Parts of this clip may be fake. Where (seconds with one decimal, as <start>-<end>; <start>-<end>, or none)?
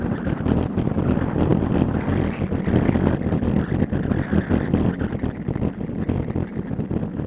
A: none